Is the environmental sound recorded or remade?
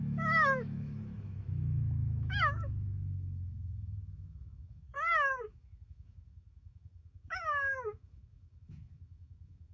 remade